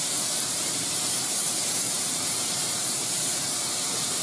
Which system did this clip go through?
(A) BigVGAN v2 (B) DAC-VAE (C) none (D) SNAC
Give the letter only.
A